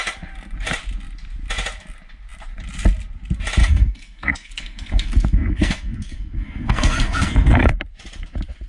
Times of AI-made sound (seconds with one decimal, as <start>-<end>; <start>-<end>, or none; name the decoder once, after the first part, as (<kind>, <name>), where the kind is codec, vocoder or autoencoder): 3.6-7.7 (codec, SNAC)